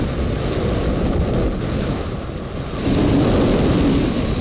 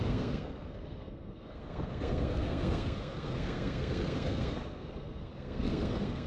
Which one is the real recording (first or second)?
first